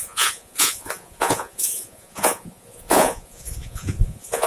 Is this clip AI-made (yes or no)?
yes